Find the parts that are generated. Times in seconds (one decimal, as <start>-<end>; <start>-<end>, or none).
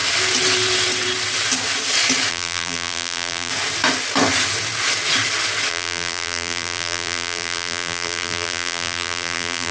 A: 2.3-3.5; 5.7-9.7